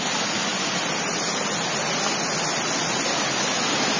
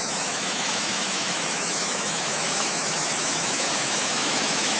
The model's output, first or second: second